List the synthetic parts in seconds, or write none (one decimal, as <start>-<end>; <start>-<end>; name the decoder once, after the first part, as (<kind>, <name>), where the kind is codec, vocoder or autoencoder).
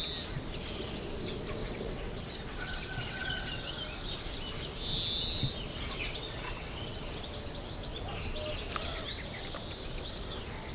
1.6-3.7 (vocoder, WaveNeXt); 5.7-7.2